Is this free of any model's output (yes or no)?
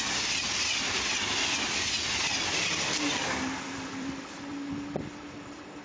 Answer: no